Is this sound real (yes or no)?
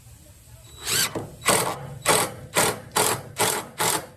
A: yes